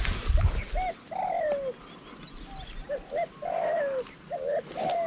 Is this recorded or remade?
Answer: recorded